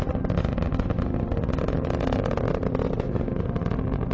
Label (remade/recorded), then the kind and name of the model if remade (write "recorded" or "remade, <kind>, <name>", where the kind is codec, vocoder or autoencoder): recorded